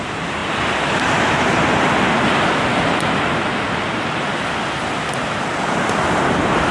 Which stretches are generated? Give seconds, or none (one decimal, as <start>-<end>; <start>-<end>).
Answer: 0.0-0.4; 4.4-6.7